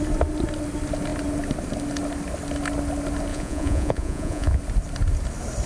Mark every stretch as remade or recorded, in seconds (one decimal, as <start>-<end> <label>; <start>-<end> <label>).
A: 0.0-3.3 recorded; 3.3-4.6 remade; 4.6-5.7 recorded